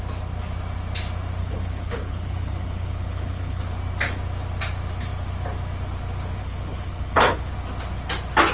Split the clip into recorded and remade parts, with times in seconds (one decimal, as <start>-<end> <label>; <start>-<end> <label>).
0.0-1.4 recorded; 1.4-3.6 remade; 3.6-6.4 recorded; 6.4-7.5 remade; 7.5-8.5 recorded